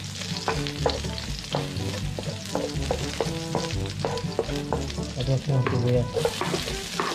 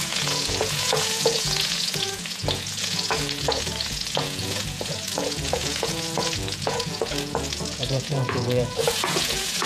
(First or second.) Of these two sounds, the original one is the first